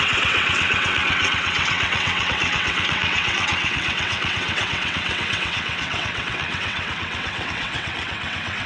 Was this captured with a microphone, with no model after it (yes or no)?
no